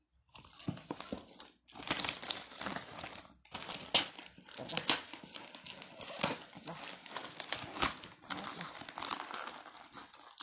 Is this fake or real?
real